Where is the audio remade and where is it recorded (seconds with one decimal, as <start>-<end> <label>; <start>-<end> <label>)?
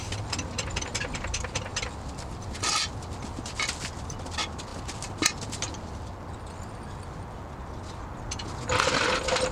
0.0-9.5 recorded